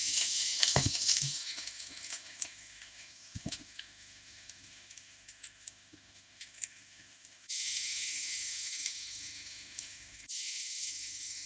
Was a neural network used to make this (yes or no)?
yes